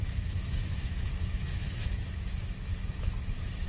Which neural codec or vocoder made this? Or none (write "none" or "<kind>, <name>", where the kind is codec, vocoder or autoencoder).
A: autoencoder, DAC-VAE